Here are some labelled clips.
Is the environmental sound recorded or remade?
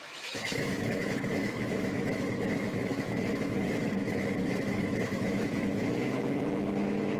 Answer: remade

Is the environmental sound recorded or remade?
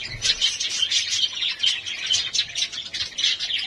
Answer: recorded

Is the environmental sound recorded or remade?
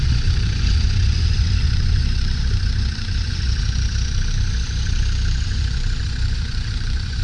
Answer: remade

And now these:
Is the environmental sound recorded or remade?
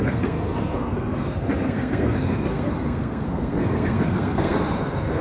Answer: remade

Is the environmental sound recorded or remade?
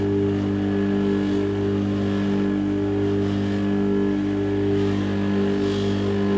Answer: recorded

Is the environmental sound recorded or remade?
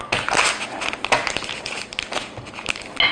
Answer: recorded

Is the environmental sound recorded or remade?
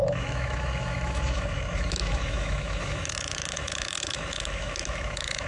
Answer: remade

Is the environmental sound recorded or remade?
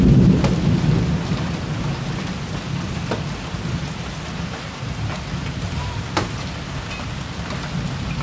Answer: recorded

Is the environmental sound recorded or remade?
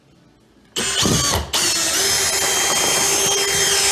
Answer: recorded